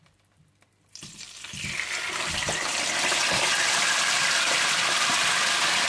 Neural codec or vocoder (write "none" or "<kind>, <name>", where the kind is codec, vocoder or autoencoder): vocoder, BigVGAN v2